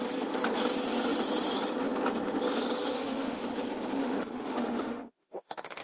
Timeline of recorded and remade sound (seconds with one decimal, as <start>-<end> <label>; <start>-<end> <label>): 0.0-2.8 recorded; 2.8-3.4 remade; 3.4-4.0 recorded; 4.0-5.8 remade